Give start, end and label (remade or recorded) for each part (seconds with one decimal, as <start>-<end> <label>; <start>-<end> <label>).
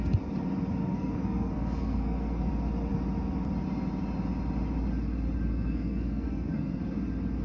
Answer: 0.0-0.8 recorded; 0.8-2.5 remade; 2.5-5.5 recorded; 5.5-6.8 remade; 6.8-7.4 recorded